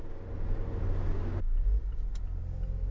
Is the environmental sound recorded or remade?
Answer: recorded